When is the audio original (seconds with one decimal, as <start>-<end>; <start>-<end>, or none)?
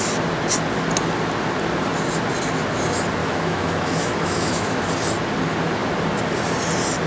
0.0-3.2; 4.9-7.1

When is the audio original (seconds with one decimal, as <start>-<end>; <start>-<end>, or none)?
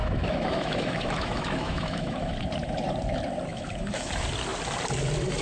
2.3-3.5; 4.1-5.4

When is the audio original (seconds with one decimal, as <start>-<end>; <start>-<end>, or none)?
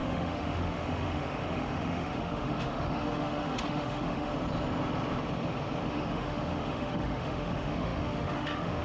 4.3-5.9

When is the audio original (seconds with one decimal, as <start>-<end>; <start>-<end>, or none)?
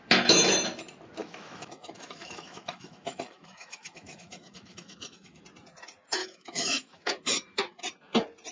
0.0-1.2; 5.4-6.2; 7.1-8.5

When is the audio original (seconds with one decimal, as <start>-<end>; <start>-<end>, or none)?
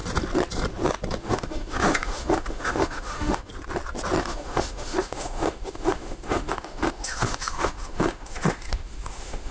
0.0-1.2; 3.5-4.2